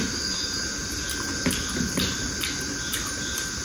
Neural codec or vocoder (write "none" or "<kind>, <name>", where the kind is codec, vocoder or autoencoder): none